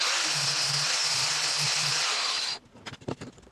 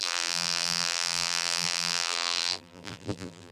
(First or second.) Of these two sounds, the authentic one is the first